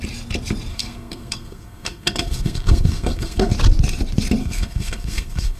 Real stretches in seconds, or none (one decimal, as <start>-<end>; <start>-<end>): 0.0-0.7; 3.5-4.4